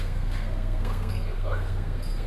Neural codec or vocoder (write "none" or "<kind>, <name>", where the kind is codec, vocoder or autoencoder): codec, SNAC